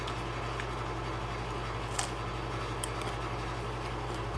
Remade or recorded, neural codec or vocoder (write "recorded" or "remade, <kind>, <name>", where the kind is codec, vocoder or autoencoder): recorded